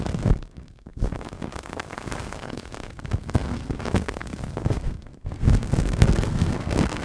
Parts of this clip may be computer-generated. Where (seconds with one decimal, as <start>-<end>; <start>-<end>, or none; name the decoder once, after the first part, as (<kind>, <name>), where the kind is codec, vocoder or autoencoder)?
0.0-7.0 (codec, SNAC)

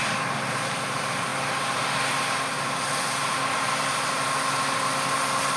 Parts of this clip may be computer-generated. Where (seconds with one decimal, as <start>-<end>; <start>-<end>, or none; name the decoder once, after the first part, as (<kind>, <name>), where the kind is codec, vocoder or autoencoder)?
none

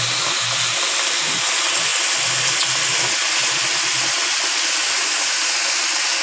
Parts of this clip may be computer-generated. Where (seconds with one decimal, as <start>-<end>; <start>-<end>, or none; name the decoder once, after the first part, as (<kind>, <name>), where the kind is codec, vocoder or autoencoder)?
none

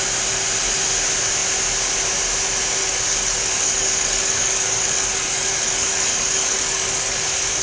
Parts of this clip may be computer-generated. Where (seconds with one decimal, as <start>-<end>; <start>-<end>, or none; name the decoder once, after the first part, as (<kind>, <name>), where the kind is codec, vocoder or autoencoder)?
2.8-7.6 (codec, DAC)

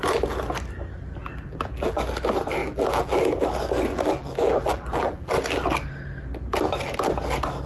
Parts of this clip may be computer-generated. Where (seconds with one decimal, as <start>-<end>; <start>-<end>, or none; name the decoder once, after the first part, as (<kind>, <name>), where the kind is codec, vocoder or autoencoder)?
1.2-2.0 (vocoder, BigVGAN v2); 2.6-3.2; 3.9-5.3

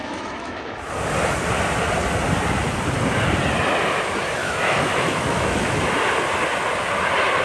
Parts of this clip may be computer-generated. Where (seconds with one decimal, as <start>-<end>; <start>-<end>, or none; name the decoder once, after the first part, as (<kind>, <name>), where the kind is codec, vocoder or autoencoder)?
0.0-0.9 (autoencoder, DAC-VAE); 4.4-5.8

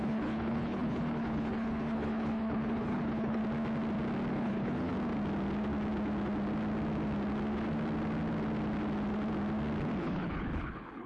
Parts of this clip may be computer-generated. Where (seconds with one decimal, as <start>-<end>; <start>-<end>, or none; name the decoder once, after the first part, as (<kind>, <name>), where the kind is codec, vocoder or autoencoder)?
0.0-3.4 (codec, HILCodec); 4.3-4.9; 10.0-11.1